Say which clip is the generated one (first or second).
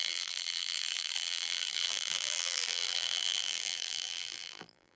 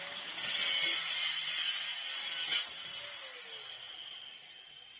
first